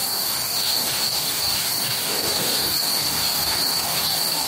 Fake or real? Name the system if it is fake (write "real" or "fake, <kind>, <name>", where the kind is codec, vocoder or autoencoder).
fake, codec, DAC